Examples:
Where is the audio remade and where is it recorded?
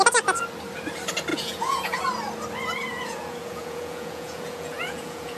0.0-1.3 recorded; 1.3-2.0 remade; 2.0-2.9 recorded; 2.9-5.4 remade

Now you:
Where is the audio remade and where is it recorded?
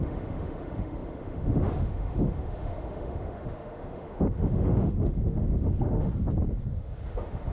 0.0-6.1 remade; 6.1-6.7 recorded; 6.7-7.5 remade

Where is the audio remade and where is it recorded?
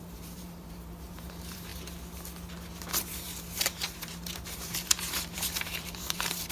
0.0-1.7 remade; 1.7-3.0 recorded; 3.0-6.5 remade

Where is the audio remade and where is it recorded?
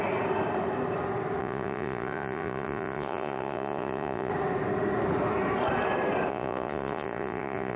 0.0-1.4 recorded; 1.4-4.3 remade; 4.3-6.3 recorded; 6.3-7.8 remade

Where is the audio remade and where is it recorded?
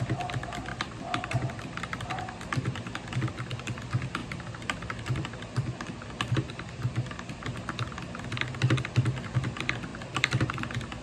0.0-0.7 recorded; 0.7-3.1 remade; 3.1-4.2 recorded; 4.2-7.4 remade; 7.4-9.9 recorded; 9.9-10.5 remade; 10.5-11.0 recorded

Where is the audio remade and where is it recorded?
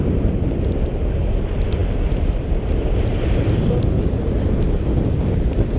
0.0-5.8 recorded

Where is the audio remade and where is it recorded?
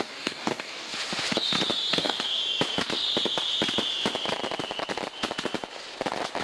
0.0-0.9 remade; 0.9-1.9 recorded; 1.9-2.4 remade; 2.4-6.4 recorded